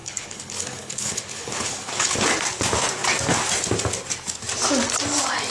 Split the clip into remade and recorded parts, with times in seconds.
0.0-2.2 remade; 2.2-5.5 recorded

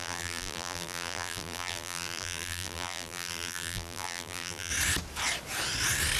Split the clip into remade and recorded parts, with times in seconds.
0.0-4.7 remade; 4.7-6.2 recorded

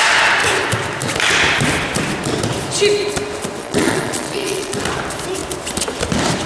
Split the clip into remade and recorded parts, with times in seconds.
0.0-3.6 recorded; 3.6-4.7 remade; 4.7-6.5 recorded

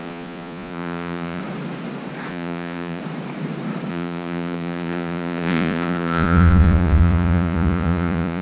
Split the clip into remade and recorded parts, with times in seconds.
0.0-1.4 remade; 1.4-2.3 recorded; 2.3-3.0 remade; 3.0-3.9 recorded; 3.9-8.4 remade

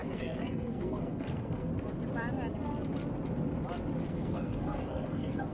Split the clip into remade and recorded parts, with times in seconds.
0.0-1.7 remade; 1.7-4.0 recorded; 4.0-5.5 remade

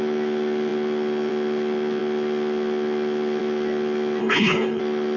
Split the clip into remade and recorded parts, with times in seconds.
0.0-4.2 recorded; 4.2-4.8 remade; 4.8-5.2 recorded

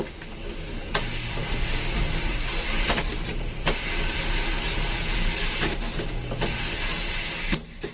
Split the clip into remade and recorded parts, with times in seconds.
0.0-7.9 recorded